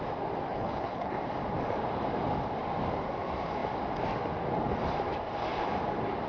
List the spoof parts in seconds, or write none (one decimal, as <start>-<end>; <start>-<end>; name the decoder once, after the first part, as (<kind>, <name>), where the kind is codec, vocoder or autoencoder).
0.5-1.1 (codec, HILCodec)